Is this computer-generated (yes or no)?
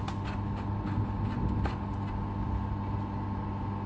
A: no